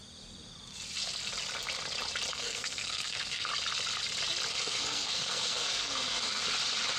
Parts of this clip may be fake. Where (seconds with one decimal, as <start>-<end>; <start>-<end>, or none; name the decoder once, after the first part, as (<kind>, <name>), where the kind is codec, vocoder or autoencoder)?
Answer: 2.3-3.5 (codec, SNAC); 4.5-6.4